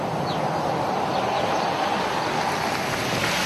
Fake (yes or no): no